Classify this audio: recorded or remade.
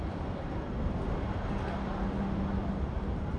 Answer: recorded